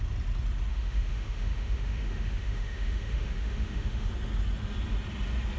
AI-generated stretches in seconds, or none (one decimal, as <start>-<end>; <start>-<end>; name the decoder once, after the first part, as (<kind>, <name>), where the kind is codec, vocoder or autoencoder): 0.7-4.1 (autoencoder, DAC-VAE)